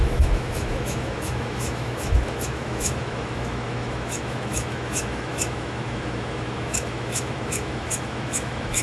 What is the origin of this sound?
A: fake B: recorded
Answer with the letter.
A